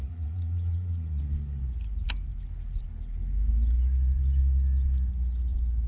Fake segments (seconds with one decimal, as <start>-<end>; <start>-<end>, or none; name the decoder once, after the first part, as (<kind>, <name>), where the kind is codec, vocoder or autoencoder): 0.0-1.2 (vocoder, Vocos)

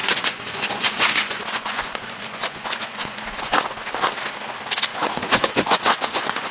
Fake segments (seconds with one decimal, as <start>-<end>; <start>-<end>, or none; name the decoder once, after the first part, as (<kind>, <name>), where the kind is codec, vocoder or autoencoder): 0.0-3.9 (vocoder, Vocos); 4.9-6.5